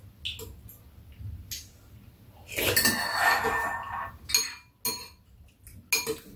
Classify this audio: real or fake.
real